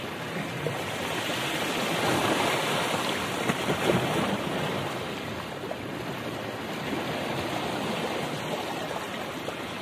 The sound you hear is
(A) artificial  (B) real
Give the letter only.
B